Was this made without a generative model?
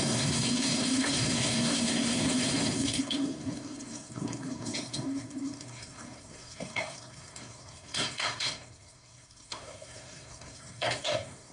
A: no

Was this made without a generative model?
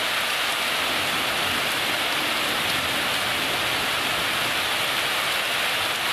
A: yes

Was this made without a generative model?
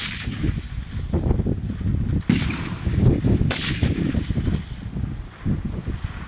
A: yes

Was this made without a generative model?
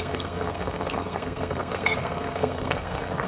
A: no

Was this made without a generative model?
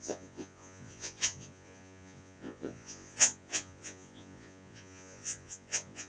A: no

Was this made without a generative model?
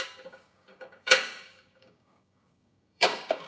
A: no